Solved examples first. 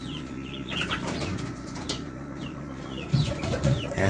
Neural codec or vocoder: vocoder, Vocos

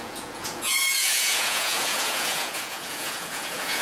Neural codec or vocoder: vocoder, Vocos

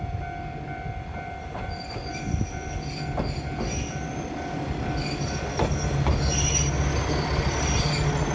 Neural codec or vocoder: none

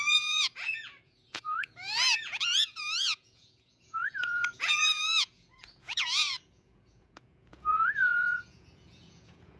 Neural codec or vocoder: vocoder, Vocos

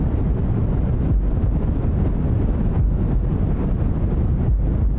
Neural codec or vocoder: none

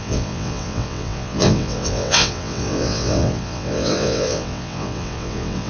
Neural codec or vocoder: vocoder, WaveNeXt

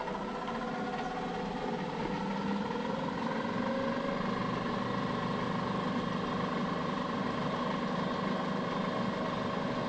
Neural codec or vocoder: none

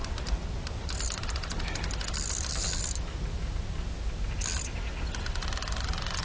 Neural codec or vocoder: none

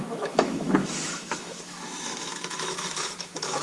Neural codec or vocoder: autoencoder, DAC-VAE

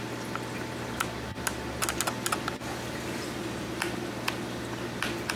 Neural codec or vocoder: none